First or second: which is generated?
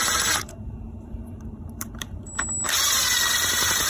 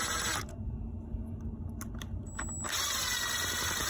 first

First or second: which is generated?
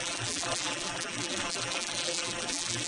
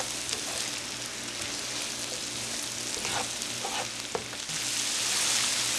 first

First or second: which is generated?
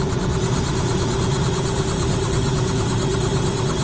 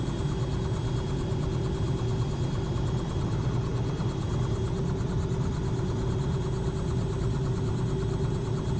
first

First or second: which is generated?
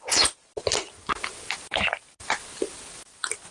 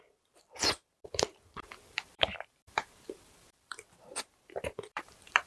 second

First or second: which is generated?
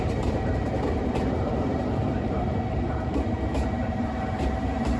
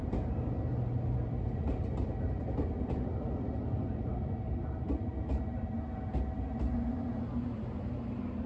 first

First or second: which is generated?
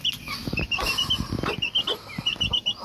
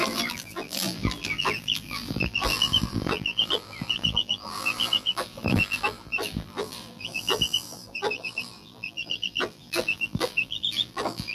second